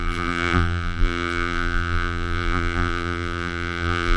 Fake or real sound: fake